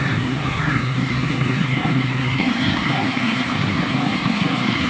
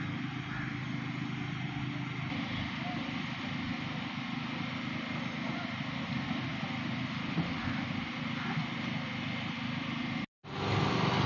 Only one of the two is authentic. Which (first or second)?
second